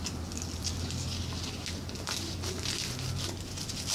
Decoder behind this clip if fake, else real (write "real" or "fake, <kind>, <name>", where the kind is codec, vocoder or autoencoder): real